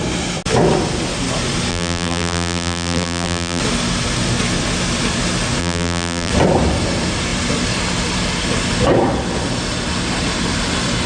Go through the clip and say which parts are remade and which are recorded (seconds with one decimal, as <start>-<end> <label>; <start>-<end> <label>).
0.0-1.7 recorded; 1.7-3.6 remade; 3.6-5.6 recorded; 5.6-6.3 remade; 6.3-11.1 recorded